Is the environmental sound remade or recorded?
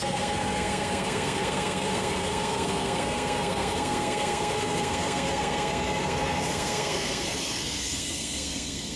remade